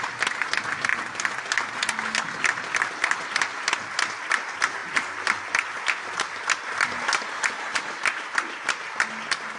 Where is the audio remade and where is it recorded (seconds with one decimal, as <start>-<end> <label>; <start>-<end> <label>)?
0.0-9.6 recorded